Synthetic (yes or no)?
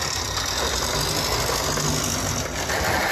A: no